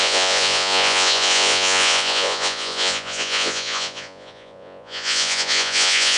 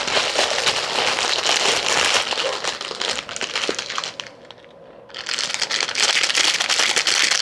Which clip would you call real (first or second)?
second